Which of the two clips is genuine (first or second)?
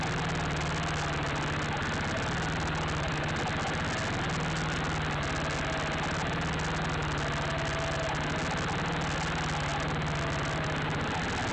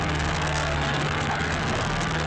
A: first